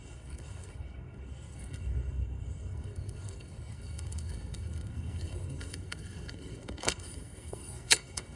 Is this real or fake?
fake